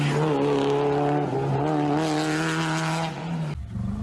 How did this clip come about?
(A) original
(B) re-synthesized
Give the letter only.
A